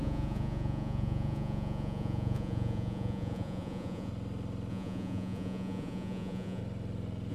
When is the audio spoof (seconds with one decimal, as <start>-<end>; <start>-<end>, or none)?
0.0-4.1; 4.7-6.6